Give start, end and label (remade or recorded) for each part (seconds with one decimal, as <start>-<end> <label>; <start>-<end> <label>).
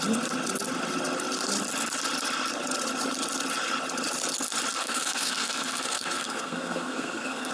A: 0.0-4.8 recorded; 4.8-7.5 remade